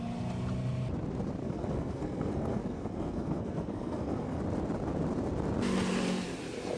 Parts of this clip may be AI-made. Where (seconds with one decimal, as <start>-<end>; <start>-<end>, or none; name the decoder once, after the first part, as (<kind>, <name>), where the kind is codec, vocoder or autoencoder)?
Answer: 1.4-4.4 (codec, SNAC)